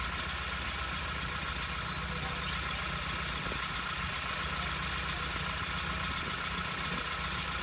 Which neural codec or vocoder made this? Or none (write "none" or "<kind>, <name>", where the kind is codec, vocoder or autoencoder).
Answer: none